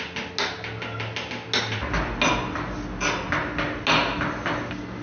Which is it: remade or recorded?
recorded